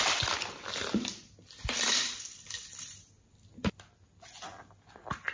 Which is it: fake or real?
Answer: real